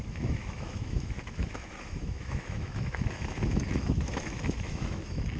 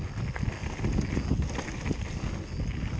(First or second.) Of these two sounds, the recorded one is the second